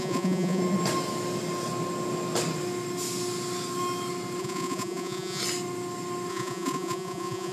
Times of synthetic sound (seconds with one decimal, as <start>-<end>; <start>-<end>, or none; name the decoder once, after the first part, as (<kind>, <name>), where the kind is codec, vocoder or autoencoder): 0.0-0.6 (vocoder, Vocos); 4.4-5.4; 6.3-7.5